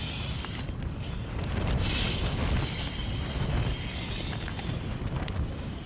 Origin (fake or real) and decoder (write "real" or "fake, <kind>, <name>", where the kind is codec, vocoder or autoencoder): real